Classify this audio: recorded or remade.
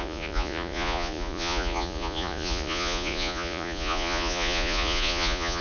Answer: remade